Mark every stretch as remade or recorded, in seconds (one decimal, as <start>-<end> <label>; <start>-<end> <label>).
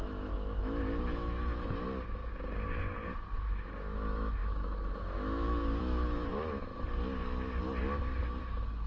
0.0-2.2 remade; 2.2-3.4 recorded; 3.4-6.7 remade; 6.7-8.4 recorded; 8.4-8.9 remade